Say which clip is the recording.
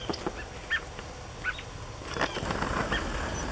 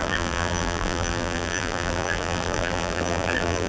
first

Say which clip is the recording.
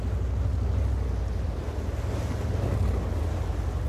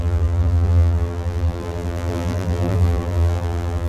first